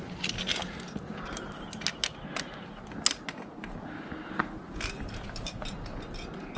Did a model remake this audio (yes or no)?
no